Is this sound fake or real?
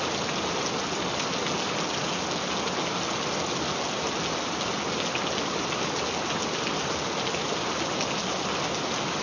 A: real